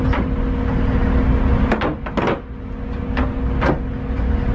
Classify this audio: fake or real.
real